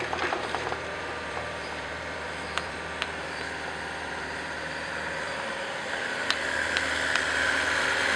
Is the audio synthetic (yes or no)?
yes